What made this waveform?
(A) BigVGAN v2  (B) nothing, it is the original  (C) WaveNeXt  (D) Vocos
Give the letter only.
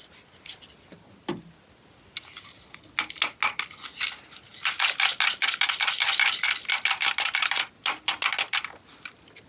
B